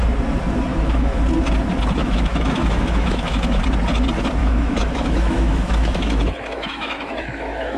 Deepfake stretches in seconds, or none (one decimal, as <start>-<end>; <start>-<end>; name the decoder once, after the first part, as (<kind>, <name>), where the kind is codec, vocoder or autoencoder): 0.7-1.2 (autoencoder, DAC-VAE); 2.0-3.6; 4.4-7.8